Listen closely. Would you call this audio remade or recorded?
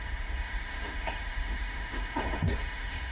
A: remade